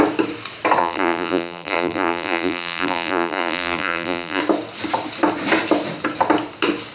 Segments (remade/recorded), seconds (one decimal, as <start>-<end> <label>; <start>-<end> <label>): 0.0-0.8 recorded; 0.8-4.4 remade; 4.4-6.9 recorded